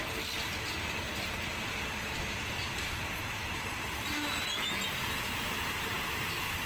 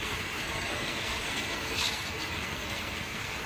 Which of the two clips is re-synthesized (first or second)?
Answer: second